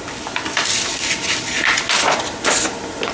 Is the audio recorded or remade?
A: recorded